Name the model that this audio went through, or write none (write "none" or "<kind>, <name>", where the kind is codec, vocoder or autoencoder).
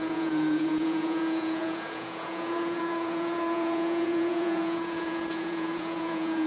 vocoder, Vocos